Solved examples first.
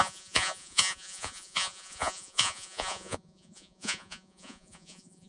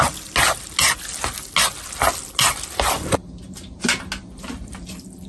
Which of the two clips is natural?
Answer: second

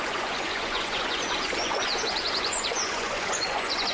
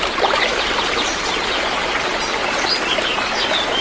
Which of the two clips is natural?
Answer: second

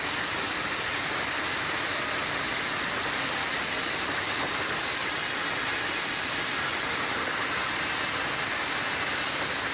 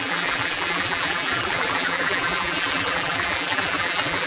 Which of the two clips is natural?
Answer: first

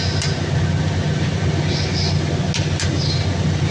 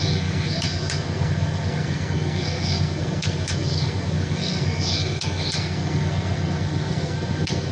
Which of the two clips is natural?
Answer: first